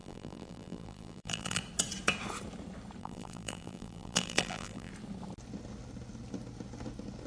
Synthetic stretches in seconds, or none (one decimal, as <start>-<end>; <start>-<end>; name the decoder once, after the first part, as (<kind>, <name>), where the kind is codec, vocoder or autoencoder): 0.0-1.6 (vocoder, BigVGAN v2); 3.0-4.9